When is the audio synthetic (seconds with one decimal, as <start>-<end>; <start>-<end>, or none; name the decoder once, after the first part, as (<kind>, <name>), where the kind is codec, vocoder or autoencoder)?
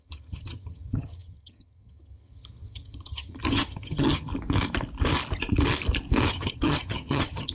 0.0-4.3 (vocoder, HiFi-GAN); 6.3-7.5